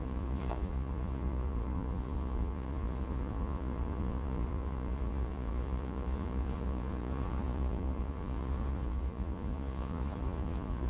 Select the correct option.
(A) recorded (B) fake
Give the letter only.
B